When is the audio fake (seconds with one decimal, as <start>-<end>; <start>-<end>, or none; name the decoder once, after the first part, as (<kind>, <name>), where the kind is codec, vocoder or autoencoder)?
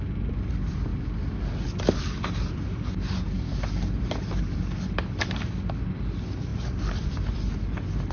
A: none